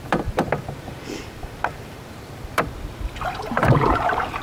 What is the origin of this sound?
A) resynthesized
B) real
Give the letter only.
A